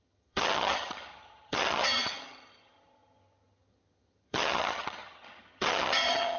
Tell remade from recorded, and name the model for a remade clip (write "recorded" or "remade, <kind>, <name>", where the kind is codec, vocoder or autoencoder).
remade, vocoder, HiFi-GAN